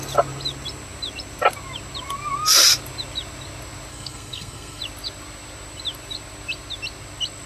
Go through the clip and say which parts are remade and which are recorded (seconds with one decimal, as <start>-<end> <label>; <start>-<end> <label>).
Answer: 0.0-3.9 recorded; 3.9-4.8 remade; 4.8-7.5 recorded